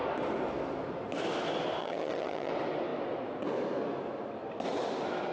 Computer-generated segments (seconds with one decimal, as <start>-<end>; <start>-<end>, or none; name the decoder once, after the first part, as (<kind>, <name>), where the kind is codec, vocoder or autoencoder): 1.8-2.5 (vocoder, HiFi-GAN)